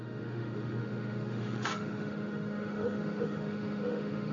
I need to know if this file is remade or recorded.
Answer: remade